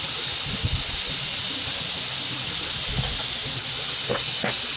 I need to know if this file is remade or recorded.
recorded